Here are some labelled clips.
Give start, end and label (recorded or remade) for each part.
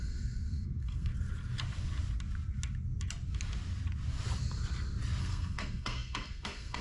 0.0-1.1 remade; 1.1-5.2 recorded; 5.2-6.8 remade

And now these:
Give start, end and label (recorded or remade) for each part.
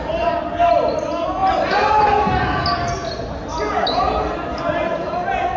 0.0-1.4 recorded; 1.4-2.0 remade; 2.0-5.6 recorded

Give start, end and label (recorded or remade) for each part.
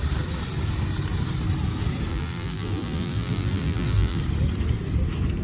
0.0-2.1 recorded; 2.1-4.2 remade; 4.2-5.4 recorded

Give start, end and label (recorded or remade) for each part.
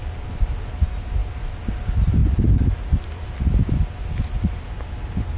0.0-5.4 recorded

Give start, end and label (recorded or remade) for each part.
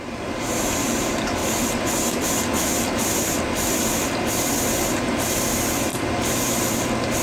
0.0-1.4 remade; 1.4-4.2 recorded; 4.2-5.9 remade; 5.9-7.2 recorded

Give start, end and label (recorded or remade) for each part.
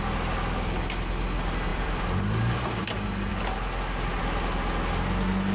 0.0-1.7 recorded; 1.7-2.9 remade; 2.9-5.5 recorded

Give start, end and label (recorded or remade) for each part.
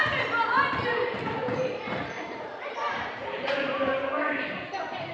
0.0-1.7 recorded; 1.7-4.1 remade; 4.1-5.1 recorded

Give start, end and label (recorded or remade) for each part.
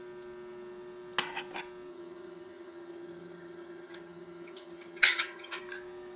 0.0-1.9 recorded; 1.9-5.6 remade; 5.6-6.2 recorded